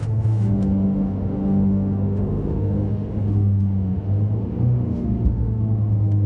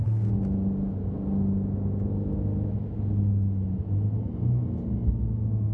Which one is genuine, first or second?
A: second